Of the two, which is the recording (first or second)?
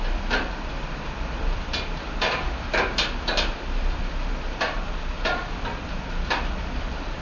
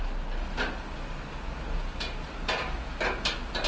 second